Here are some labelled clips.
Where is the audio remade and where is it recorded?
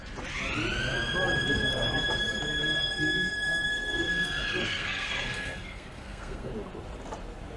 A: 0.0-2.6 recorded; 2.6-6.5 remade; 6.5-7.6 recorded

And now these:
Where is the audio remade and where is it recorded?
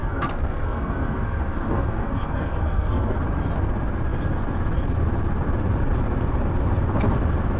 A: 0.0-3.2 remade; 3.2-7.6 recorded